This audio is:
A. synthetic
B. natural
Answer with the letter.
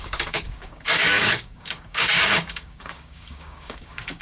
A